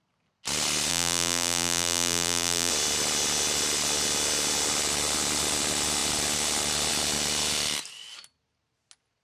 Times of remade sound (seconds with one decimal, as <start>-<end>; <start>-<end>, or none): 0.9-2.7